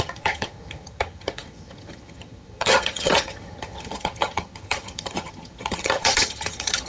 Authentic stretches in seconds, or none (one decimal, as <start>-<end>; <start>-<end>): none